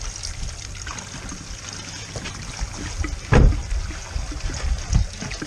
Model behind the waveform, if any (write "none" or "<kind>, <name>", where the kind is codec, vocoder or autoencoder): none